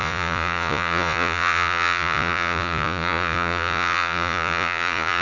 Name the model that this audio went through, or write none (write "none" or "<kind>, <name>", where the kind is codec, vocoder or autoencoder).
vocoder, Vocos